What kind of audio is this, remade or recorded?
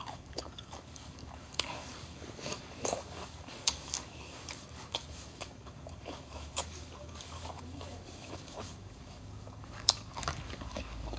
remade